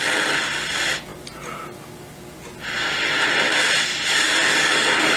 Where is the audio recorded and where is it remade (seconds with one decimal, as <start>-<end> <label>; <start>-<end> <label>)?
0.0-4.5 recorded; 4.5-5.2 remade